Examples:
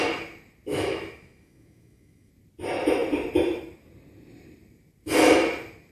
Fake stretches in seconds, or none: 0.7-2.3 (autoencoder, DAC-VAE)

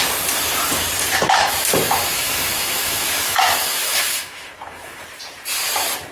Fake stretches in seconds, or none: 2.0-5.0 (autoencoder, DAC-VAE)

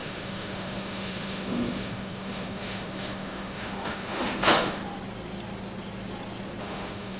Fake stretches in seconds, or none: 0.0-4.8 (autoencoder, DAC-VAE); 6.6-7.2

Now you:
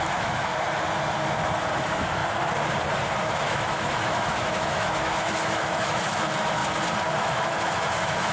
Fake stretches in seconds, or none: 0.0-0.5 (autoencoder, DAC-VAE); 1.8-2.2; 3.2-6.6; 7.2-8.3

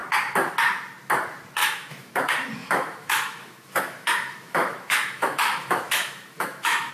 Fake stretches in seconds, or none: 1.6-2.2 (autoencoder, DAC-VAE); 2.6-6.9

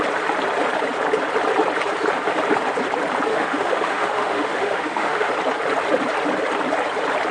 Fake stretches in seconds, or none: 3.3-5.3 (autoencoder, DAC-VAE)